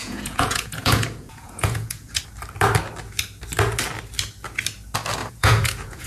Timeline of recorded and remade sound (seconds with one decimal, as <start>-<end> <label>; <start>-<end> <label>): 0.0-2.2 remade; 2.2-5.2 recorded; 5.2-6.1 remade